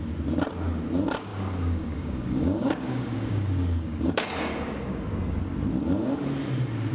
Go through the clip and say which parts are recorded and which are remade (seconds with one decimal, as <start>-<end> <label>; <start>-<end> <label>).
0.0-1.3 recorded; 1.3-5.4 remade; 5.4-6.9 recorded